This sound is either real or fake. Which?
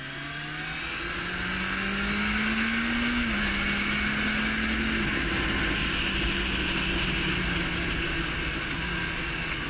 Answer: real